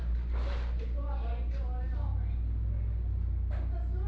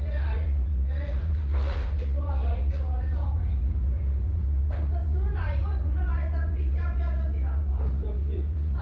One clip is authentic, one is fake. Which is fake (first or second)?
second